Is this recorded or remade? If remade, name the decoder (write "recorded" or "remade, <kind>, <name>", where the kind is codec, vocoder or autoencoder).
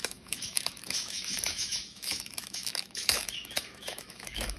remade, autoencoder, DAC-VAE